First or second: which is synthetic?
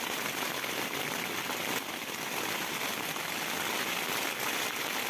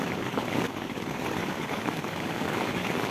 second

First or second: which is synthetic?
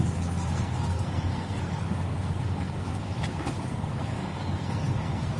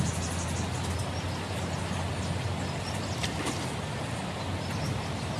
first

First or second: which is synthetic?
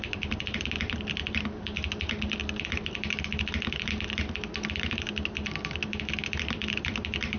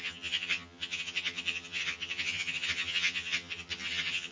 second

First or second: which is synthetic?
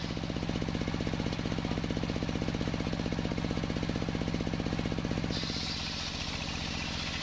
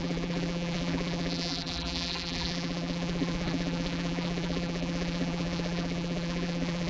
second